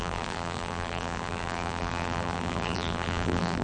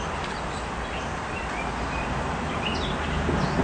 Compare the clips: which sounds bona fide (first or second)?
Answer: second